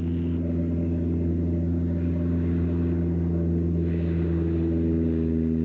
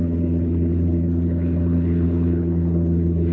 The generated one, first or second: second